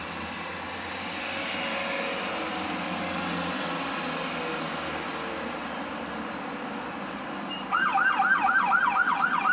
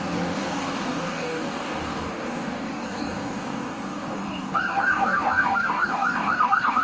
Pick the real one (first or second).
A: first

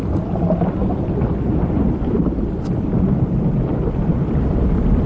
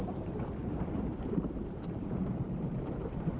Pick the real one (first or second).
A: first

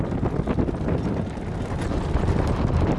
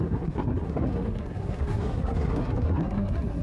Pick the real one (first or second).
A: first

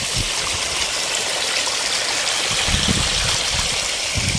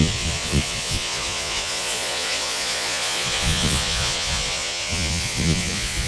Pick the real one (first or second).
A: first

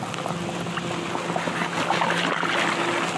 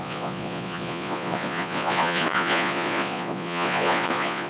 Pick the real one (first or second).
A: first